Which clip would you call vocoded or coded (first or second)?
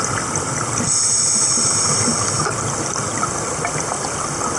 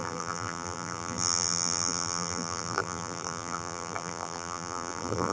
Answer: second